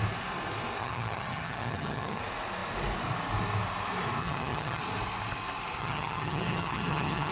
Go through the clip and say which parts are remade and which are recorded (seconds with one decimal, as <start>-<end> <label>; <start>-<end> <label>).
0.0-0.8 recorded; 0.8-2.2 remade; 2.2-4.2 recorded; 4.2-4.8 remade; 4.8-5.8 recorded; 5.8-7.3 remade